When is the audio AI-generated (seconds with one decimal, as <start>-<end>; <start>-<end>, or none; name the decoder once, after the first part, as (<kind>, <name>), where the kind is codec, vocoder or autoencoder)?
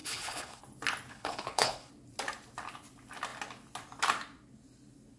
0.0-0.6 (codec, HILCodec); 1.1-1.9